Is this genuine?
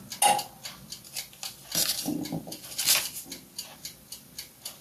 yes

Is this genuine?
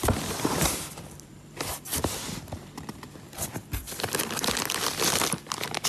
no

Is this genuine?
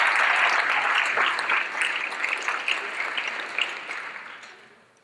yes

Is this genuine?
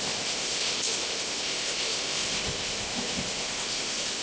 no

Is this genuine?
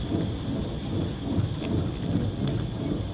yes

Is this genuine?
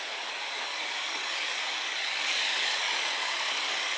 no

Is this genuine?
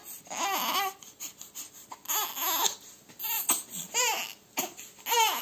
yes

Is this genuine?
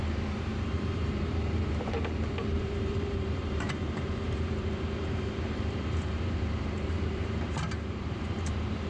no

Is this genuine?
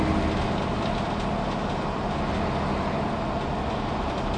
yes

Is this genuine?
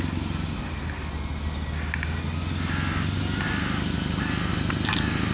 yes